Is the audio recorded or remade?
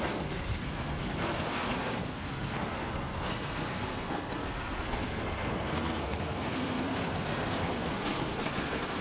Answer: remade